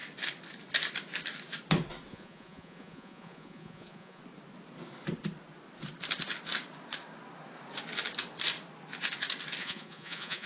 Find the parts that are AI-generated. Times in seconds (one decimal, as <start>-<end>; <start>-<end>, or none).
2.1-4.2; 9.6-10.5

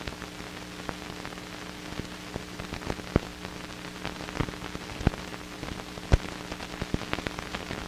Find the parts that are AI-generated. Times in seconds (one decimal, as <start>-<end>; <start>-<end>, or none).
none

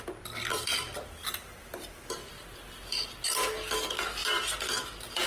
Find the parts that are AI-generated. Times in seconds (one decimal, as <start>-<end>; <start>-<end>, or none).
0.5-2.3; 4.2-5.3

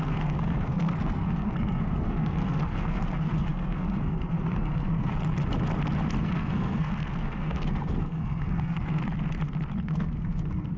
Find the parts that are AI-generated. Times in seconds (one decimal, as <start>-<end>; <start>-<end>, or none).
0.0-5.1; 6.2-9.0; 9.8-10.8

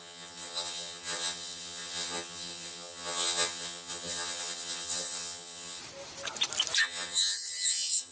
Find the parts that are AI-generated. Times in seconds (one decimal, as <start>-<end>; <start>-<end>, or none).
0.0-5.8; 6.8-8.1